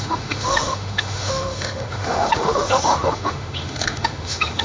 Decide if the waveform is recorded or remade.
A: remade